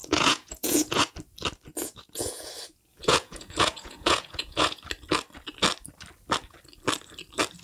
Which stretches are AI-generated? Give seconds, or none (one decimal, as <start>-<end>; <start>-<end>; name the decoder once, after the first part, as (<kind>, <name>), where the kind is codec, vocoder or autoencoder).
0.0-1.1 (vocoder, Vocos); 1.8-2.5; 2.9-4.8